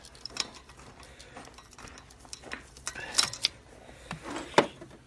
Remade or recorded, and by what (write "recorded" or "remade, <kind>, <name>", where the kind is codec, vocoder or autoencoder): recorded